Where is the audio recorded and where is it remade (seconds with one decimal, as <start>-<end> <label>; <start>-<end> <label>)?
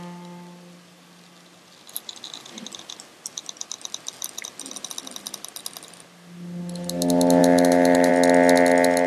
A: 0.0-7.4 recorded; 7.4-8.1 remade; 8.1-9.1 recorded